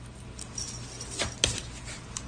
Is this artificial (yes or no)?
no